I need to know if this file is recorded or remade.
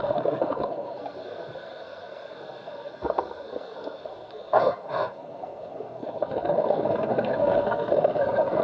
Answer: remade